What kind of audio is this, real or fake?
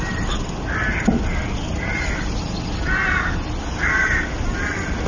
real